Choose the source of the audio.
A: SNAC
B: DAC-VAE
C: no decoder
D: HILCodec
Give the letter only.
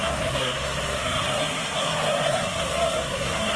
A